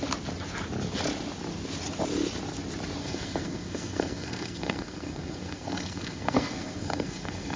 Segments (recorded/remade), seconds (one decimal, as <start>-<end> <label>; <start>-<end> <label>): 0.0-3.0 recorded; 3.0-7.6 remade